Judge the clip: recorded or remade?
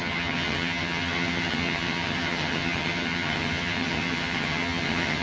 remade